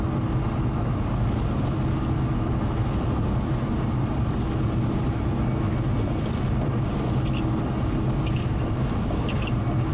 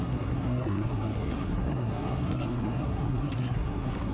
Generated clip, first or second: second